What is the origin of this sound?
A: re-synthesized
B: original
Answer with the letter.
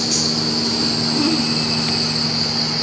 B